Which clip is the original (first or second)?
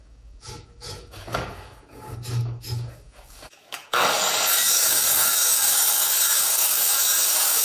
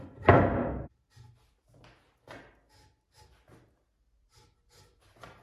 second